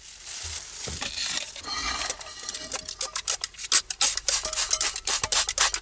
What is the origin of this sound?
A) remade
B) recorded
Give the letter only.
B